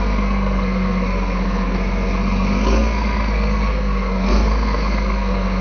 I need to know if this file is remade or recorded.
remade